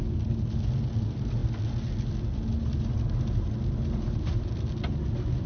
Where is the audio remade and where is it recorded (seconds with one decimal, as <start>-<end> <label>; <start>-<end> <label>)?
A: 0.0-5.5 recorded